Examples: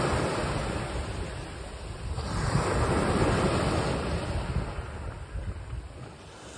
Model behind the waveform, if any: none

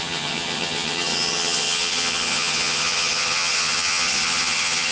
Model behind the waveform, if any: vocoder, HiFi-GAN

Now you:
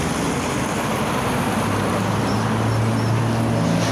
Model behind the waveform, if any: none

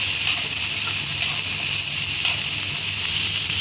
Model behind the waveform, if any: none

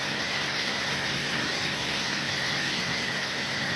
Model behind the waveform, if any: codec, SNAC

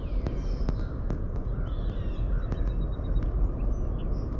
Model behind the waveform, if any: none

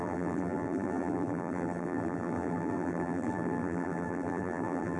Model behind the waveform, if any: vocoder, BigVGAN v2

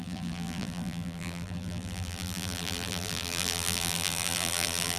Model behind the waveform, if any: vocoder, BigVGAN v2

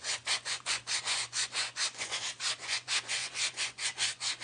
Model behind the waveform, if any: vocoder, Vocos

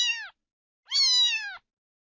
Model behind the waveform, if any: none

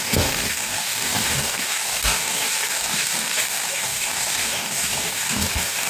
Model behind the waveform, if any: codec, DAC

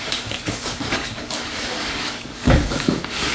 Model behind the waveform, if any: codec, DAC